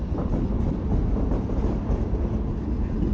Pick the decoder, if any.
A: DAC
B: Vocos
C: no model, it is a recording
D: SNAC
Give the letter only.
C